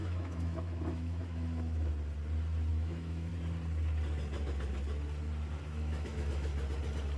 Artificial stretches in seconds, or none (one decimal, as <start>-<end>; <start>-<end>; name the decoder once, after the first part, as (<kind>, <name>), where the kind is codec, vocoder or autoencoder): 0.0-1.9 (autoencoder, DAC-VAE); 2.7-3.3; 5.6-6.5